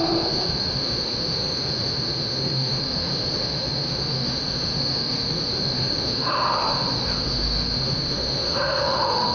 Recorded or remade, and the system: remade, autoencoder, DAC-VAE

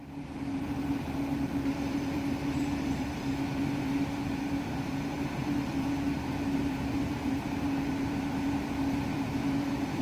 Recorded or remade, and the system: remade, vocoder, BigVGAN v2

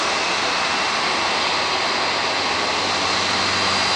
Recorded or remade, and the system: recorded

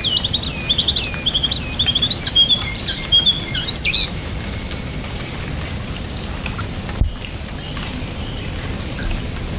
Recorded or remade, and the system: recorded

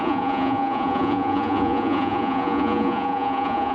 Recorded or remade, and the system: remade, vocoder, Vocos